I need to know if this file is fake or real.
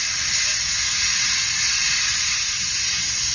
real